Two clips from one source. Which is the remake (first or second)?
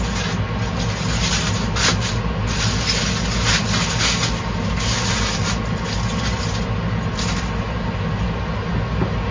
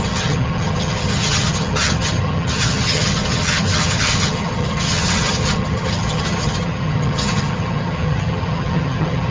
second